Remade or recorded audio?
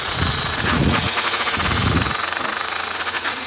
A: remade